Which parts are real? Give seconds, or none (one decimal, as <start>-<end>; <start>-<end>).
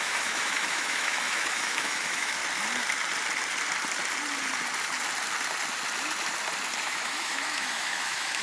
2.4-6.8